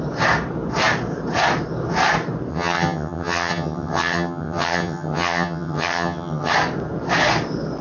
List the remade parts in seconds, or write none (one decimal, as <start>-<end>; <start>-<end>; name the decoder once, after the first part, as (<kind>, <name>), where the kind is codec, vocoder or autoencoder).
2.5-6.5 (vocoder, HiFi-GAN)